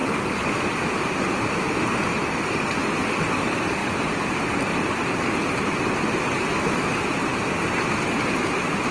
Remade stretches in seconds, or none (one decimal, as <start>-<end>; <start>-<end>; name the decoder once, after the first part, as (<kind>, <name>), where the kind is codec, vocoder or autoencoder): none